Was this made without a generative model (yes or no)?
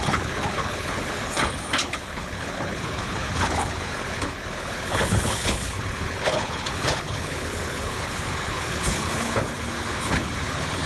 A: no